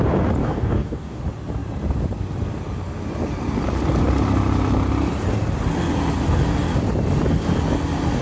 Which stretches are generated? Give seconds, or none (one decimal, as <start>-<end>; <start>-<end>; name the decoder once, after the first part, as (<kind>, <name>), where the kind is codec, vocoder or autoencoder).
0.4-1.2 (codec, DAC)